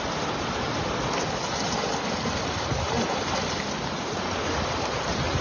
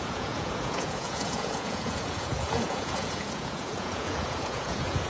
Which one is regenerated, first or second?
second